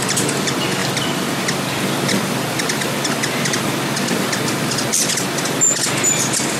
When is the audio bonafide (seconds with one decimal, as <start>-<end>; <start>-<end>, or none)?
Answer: 0.0-6.6

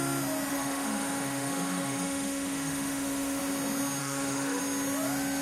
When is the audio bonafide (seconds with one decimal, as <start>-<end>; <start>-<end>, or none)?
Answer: 0.0-0.5; 3.4-4.0; 4.6-5.4

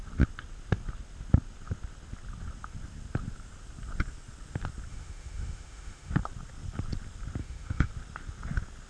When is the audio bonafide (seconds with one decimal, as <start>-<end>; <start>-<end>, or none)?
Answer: 0.0-4.9; 6.1-7.4; 7.9-8.9

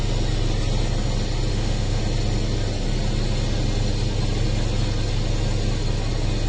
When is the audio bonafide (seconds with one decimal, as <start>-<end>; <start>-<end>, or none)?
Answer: 0.0-1.5; 2.0-6.5

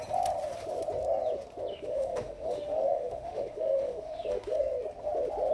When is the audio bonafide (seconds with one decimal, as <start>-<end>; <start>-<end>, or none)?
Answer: 0.0-1.7; 4.6-5.5